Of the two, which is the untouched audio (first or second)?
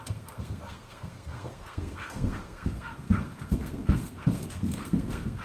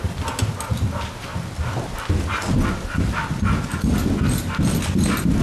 second